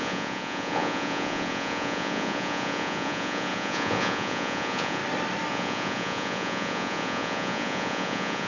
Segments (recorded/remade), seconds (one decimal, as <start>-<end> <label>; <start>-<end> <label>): 0.0-5.0 remade; 5.0-5.5 recorded; 5.5-8.5 remade